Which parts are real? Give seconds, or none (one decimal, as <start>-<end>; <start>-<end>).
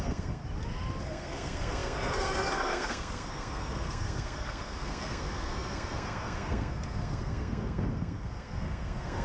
0.4-1.0